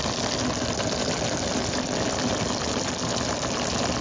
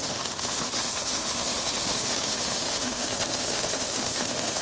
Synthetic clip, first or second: second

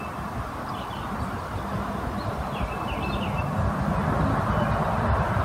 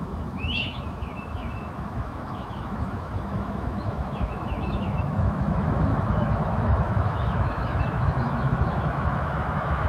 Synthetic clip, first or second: second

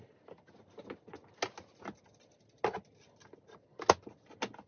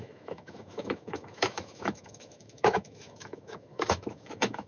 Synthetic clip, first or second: second